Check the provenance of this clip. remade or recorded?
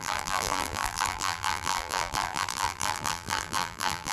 remade